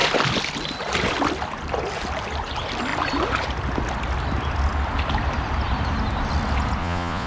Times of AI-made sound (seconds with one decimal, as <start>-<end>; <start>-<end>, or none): 6.8-7.3